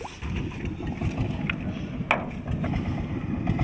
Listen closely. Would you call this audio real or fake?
real